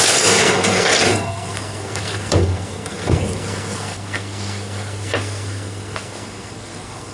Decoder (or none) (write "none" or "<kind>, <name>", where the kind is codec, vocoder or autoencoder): codec, SNAC